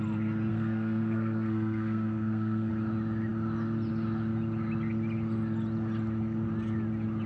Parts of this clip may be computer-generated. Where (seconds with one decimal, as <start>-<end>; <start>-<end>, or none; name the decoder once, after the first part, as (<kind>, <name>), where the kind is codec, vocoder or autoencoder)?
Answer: 0.5-2.7 (codec, SNAC)